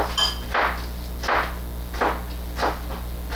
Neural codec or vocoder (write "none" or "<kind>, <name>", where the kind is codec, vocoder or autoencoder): none